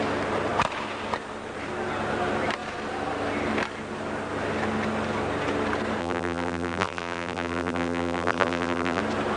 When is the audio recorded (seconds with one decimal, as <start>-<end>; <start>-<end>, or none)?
0.0-6.0; 9.0-9.4